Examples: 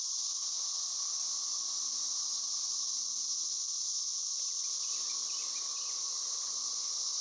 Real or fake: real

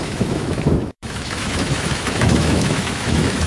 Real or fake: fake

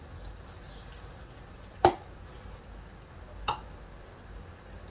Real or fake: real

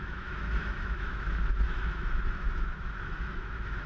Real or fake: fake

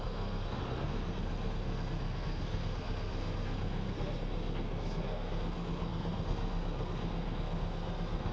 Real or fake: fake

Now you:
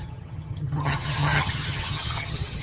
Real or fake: fake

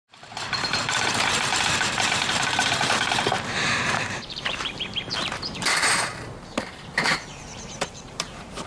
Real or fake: fake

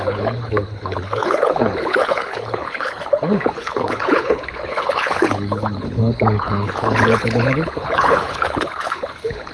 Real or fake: fake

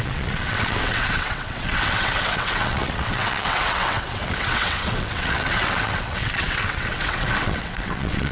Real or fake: fake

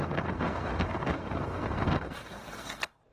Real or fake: fake